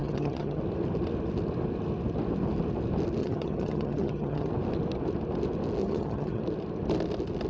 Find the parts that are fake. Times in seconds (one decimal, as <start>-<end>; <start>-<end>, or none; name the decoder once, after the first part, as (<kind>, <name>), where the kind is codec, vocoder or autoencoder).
0.0-0.6 (vocoder, HiFi-GAN); 3.2-4.5; 5.8-6.4